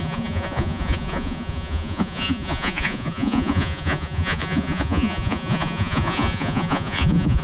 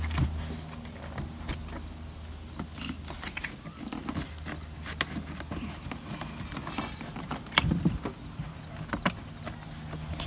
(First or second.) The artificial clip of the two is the first